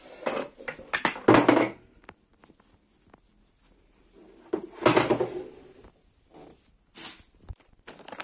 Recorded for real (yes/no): yes